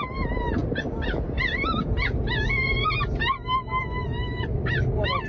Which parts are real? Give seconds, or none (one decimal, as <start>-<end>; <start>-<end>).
0.0-5.3